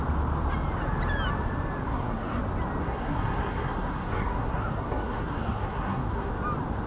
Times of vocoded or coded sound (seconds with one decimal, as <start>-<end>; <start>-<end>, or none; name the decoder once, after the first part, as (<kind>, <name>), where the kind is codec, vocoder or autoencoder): 1.9-2.4 (codec, SNAC); 2.8-6.3